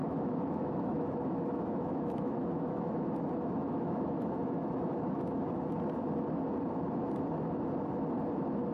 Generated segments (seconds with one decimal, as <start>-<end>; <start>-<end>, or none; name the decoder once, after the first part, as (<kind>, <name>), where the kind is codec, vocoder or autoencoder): 0.0-3.0 (autoencoder, DAC-VAE); 3.6-5.5